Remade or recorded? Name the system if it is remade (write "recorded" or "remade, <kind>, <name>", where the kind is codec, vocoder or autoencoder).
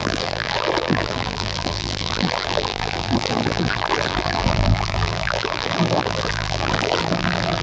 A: remade, vocoder, BigVGAN v2